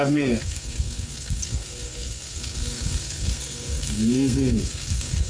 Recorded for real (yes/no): no